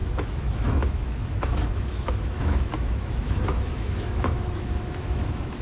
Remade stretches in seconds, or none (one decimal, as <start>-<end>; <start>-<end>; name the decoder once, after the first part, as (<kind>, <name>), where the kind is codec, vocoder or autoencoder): 0.0-5.6 (autoencoder, DAC-VAE)